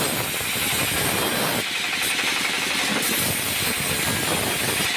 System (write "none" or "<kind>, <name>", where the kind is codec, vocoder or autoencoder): none